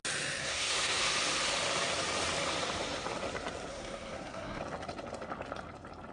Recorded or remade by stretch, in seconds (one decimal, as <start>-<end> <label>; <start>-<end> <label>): 0.0-0.4 recorded; 0.4-1.0 remade; 1.0-3.7 recorded; 3.7-4.6 remade; 4.6-6.1 recorded